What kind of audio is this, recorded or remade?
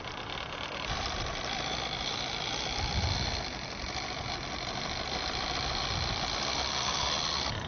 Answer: recorded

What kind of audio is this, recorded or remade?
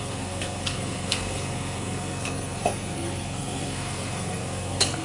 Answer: remade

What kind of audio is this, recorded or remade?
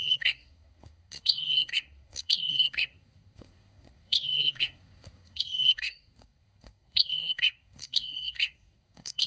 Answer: remade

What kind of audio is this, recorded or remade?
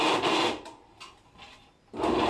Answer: recorded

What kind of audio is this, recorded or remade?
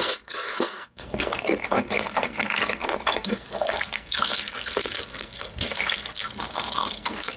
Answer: remade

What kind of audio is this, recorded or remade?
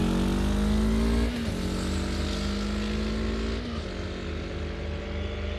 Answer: recorded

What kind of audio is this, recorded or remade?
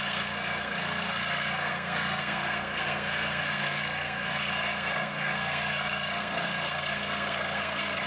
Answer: remade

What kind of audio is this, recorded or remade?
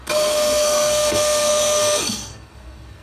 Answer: remade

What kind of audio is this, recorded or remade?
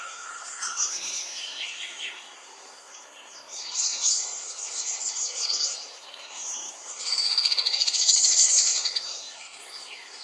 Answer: remade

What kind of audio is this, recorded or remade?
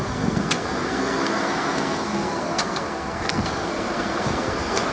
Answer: remade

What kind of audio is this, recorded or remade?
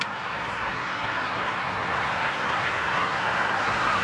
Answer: remade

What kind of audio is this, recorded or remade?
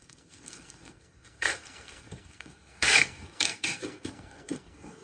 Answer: remade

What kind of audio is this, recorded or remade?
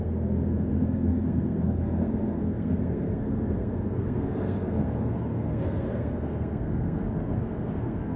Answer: remade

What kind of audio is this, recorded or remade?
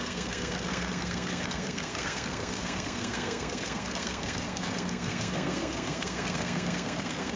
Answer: remade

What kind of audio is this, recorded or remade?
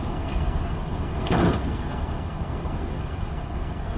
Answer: remade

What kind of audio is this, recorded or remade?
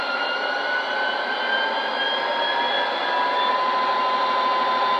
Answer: recorded